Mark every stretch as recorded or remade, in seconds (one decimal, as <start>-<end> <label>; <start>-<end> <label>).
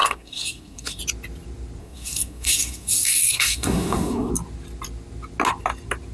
0.0-1.0 remade; 1.0-1.8 recorded; 1.8-4.3 remade; 4.3-6.1 recorded